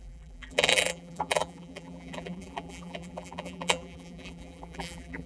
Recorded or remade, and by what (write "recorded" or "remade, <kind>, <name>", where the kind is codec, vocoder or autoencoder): remade, vocoder, BigVGAN v2